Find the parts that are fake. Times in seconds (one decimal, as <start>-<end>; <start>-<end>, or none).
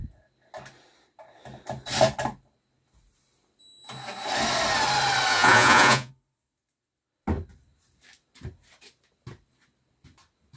5.3-6.1